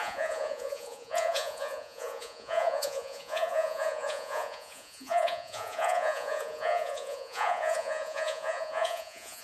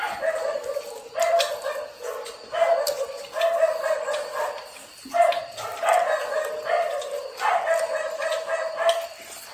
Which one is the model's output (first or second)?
first